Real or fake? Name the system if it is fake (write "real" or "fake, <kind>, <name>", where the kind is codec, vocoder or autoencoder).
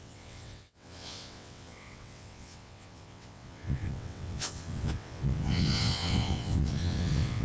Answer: fake, vocoder, WaveNeXt